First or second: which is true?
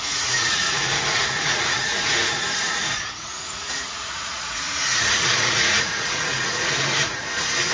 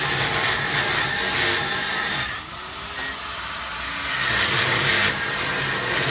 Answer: second